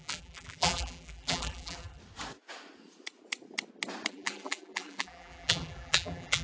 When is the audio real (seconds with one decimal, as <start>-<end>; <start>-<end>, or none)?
2.0-4.1